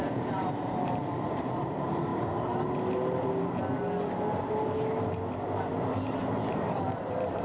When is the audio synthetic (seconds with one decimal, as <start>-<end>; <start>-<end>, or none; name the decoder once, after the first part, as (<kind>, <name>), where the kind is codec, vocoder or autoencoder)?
0.0-2.1 (vocoder, BigVGAN v2); 6.5-7.4